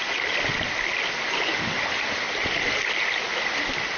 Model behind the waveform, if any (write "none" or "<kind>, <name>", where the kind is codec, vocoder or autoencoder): none